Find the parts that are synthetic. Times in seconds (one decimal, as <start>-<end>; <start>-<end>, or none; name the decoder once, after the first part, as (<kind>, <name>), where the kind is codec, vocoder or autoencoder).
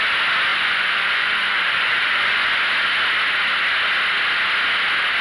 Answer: 0.5-2.6 (vocoder, Vocos)